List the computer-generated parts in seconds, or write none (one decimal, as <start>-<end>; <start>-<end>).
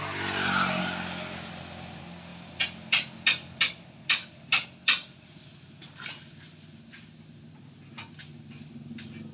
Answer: none